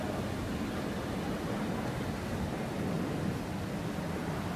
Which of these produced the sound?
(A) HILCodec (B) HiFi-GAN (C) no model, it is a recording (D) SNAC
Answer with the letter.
C